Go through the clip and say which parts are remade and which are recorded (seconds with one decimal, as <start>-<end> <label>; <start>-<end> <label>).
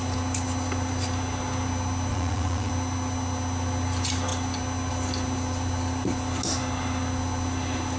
0.0-2.1 recorded; 2.1-2.7 remade; 2.7-8.0 recorded